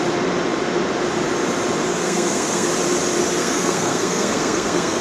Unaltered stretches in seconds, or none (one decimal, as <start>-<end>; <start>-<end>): 0.0-1.9; 2.7-3.4